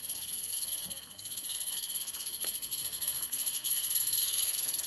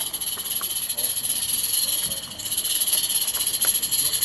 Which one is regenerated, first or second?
first